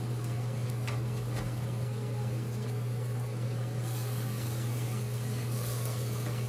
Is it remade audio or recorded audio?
remade